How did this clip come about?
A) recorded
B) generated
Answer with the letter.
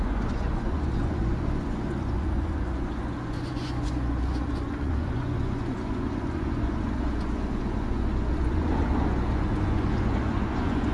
B